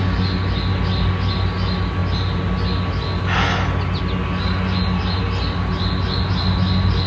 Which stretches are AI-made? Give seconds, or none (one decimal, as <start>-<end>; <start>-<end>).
none